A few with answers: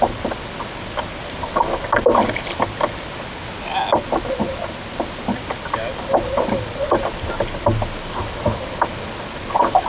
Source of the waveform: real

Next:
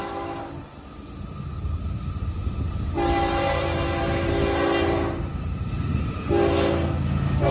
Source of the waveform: real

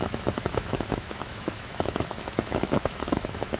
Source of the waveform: fake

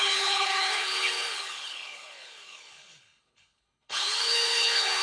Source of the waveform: fake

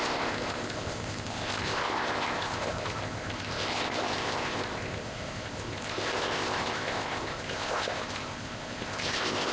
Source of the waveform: fake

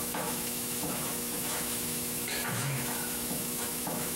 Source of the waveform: fake